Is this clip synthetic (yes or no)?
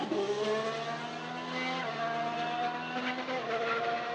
no